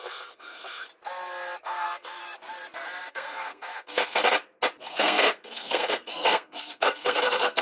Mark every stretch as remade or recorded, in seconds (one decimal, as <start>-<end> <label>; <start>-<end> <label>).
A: 0.0-0.9 remade; 0.9-1.6 recorded; 1.6-2.2 remade; 2.2-3.1 recorded; 3.1-4.2 remade; 4.2-4.8 recorded; 4.8-7.6 remade